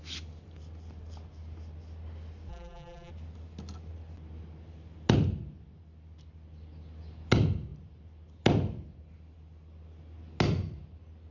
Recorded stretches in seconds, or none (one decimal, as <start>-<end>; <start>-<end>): 0.0-2.5; 3.1-11.3